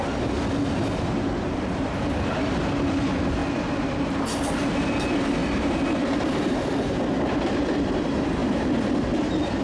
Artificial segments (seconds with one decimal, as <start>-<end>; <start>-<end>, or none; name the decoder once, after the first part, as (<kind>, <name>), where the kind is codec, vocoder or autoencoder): none